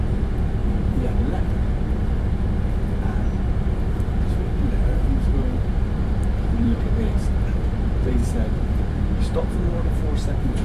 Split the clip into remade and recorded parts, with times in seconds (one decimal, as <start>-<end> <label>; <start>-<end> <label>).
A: 0.0-5.3 recorded; 5.3-7.3 remade; 7.3-8.2 recorded; 8.2-9.9 remade; 9.9-10.6 recorded

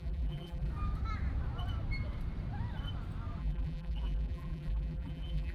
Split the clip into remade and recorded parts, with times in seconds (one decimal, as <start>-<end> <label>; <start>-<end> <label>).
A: 0.0-0.7 remade; 0.7-3.4 recorded; 3.4-5.5 remade

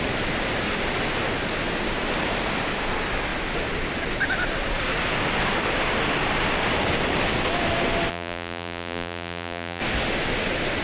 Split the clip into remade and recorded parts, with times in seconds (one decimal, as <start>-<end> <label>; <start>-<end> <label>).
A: 0.0-8.1 recorded; 8.1-9.8 remade; 9.8-10.8 recorded

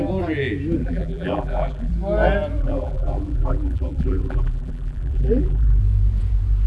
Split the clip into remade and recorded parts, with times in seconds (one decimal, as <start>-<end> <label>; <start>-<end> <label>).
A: 0.0-0.8 recorded; 0.8-1.9 remade; 1.9-2.6 recorded; 2.6-5.8 remade; 5.8-6.7 recorded

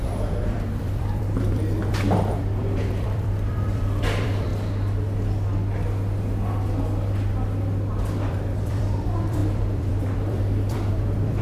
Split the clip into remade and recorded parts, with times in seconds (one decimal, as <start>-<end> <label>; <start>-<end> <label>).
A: 0.0-4.5 remade; 4.5-8.3 recorded; 8.3-11.4 remade

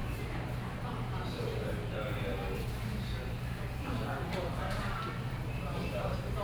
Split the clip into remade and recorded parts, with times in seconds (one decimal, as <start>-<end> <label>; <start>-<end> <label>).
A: 0.0-6.4 remade

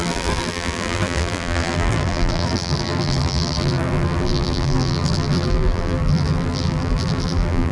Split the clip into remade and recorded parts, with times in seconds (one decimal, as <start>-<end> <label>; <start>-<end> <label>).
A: 0.0-7.7 remade

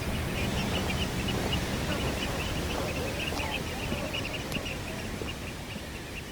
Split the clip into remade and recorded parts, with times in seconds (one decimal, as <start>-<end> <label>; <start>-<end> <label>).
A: 0.0-0.6 recorded; 0.6-1.1 remade; 1.1-1.9 recorded; 1.9-5.6 remade; 5.6-6.3 recorded